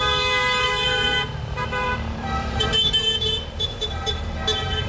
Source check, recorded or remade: remade